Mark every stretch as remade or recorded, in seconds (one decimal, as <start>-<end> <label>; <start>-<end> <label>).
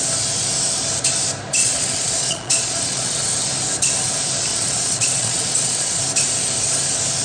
0.0-1.6 recorded; 1.6-3.3 remade; 3.3-4.5 recorded; 4.5-6.0 remade; 6.0-7.2 recorded